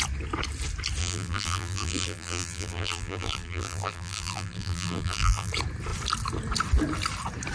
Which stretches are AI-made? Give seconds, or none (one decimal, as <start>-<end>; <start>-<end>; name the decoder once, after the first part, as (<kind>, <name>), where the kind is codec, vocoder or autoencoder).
1.0-5.5 (vocoder, BigVGAN v2)